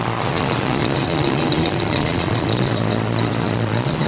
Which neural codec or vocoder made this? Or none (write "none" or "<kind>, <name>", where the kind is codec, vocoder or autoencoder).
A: vocoder, Vocos